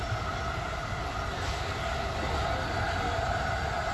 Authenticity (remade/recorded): recorded